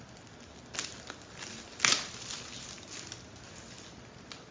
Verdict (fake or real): real